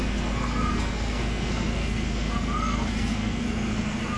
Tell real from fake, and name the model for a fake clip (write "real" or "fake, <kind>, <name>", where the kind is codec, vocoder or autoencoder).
fake, codec, SNAC